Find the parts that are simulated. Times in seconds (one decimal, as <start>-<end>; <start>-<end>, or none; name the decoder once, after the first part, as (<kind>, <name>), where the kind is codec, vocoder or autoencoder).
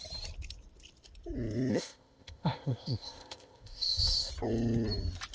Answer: 1.7-4.3 (codec, ZipCodec)